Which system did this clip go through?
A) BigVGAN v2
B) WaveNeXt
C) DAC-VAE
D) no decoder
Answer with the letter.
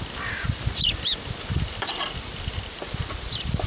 A